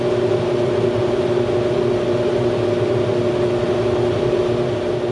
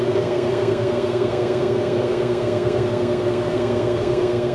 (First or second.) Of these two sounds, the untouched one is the first